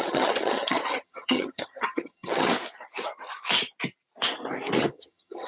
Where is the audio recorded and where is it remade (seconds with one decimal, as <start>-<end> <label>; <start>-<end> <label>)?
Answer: 0.0-2.5 remade; 2.5-4.8 recorded; 4.8-5.5 remade

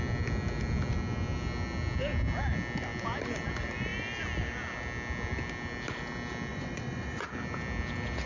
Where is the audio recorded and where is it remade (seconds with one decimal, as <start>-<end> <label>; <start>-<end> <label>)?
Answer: 0.0-6.5 recorded; 6.5-7.3 remade; 7.3-8.3 recorded

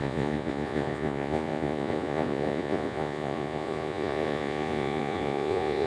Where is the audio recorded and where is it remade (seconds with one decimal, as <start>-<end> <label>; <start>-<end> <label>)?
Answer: 0.0-5.9 remade

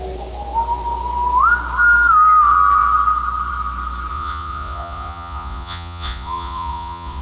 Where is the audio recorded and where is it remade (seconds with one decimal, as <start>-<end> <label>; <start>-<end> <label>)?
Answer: 0.0-4.1 recorded; 4.1-7.2 remade

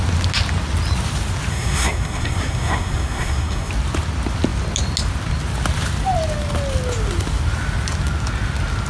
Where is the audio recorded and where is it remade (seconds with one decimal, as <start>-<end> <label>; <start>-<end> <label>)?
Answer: 0.0-1.5 recorded; 1.5-3.7 remade; 3.7-8.9 recorded

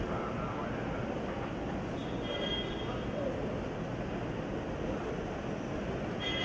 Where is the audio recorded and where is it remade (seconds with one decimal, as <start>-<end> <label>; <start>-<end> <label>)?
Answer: 0.0-6.4 recorded

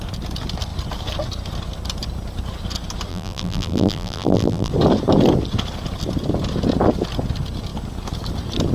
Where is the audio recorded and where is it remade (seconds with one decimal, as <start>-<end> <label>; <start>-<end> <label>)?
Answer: 0.0-3.1 recorded; 3.1-4.7 remade; 4.7-8.7 recorded